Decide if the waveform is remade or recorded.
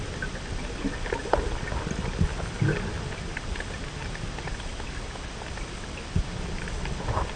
recorded